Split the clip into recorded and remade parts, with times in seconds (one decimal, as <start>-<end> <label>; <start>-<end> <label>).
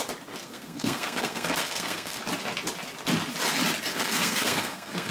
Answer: 0.0-0.4 recorded; 0.4-2.2 remade; 2.2-3.9 recorded; 3.9-5.1 remade